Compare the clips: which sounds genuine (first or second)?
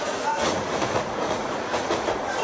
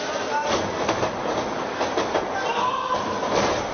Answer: second